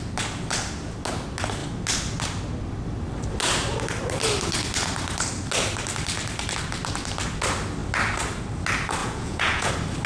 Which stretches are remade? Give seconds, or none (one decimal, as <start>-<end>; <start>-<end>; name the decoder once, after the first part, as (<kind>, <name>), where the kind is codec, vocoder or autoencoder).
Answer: 9.0-9.7 (vocoder, Vocos)